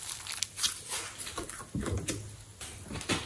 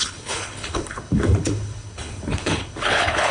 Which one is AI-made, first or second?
second